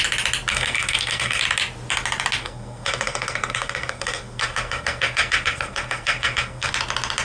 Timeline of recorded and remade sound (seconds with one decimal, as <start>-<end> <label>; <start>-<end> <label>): 0.0-0.5 recorded; 0.5-1.4 remade; 1.4-2.4 recorded; 2.4-6.7 remade; 6.7-7.2 recorded